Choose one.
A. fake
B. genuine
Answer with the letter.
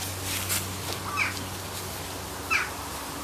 B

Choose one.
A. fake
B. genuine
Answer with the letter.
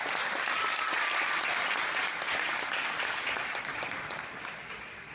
B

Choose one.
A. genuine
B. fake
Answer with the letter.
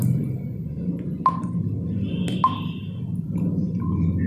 A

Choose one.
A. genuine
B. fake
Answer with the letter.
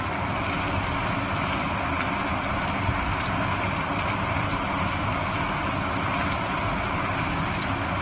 A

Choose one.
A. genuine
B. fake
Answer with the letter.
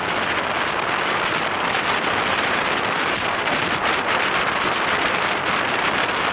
B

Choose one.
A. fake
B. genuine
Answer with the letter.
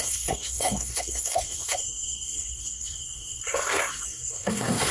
A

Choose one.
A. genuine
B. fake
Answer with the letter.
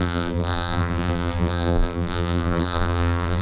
B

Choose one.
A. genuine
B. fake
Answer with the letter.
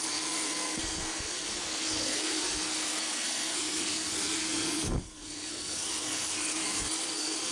B